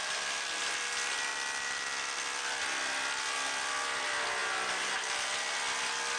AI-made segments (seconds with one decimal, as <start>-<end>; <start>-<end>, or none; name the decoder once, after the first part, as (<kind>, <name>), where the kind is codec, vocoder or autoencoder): 0.0-0.6 (vocoder, BigVGAN v2); 1.3-2.6